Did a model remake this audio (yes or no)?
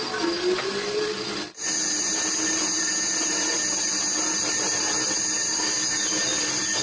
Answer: no